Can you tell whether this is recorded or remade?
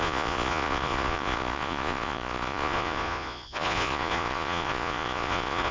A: remade